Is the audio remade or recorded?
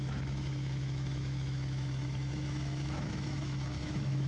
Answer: remade